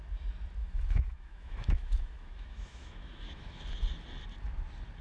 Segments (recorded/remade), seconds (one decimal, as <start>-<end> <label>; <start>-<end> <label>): 0.0-0.6 recorded; 0.6-3.6 remade; 3.6-5.0 recorded